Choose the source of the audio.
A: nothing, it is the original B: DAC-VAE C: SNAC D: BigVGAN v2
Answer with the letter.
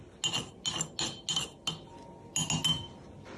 A